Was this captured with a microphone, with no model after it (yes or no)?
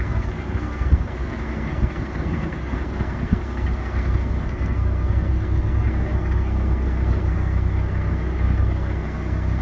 no